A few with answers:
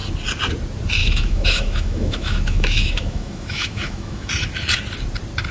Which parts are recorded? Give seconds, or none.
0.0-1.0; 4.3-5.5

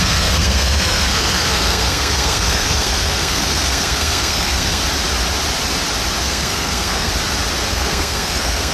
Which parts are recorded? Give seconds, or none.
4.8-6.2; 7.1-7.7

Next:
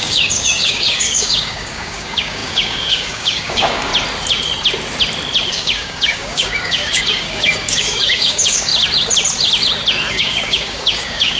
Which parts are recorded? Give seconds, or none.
3.9-5.5; 8.7-10.1

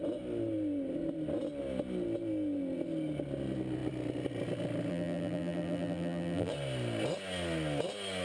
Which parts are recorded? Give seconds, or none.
0.0-4.9; 6.5-8.2

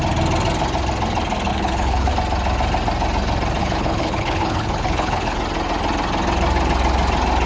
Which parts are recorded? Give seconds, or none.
0.0-1.5; 2.1-3.6; 5.4-7.5